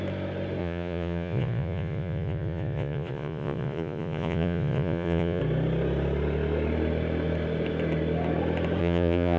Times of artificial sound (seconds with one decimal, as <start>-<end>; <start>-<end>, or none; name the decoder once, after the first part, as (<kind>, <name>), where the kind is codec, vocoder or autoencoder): 0.6-5.4 (vocoder, Vocos); 8.8-9.4